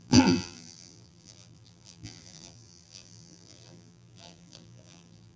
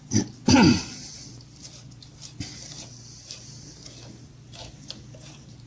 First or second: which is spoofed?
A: first